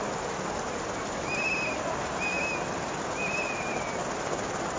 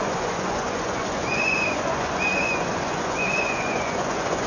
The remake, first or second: second